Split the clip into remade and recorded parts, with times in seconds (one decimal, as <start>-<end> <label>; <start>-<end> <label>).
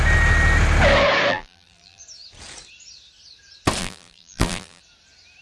0.0-1.3 recorded; 1.3-2.0 remade; 2.0-3.8 recorded; 3.8-4.8 remade; 4.8-5.4 recorded